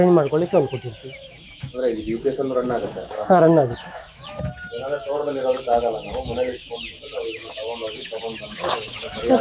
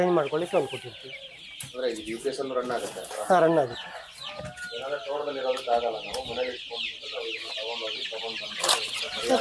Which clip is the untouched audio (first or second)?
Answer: second